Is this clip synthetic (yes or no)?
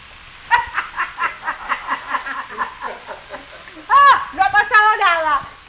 no